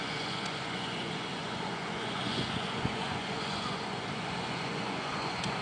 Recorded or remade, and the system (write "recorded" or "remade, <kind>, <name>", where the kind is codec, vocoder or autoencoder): remade, vocoder, Vocos